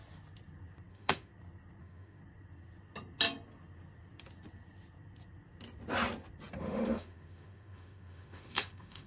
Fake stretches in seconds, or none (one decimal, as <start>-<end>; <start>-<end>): 0.9-1.3; 1.8-2.2; 6.6-9.1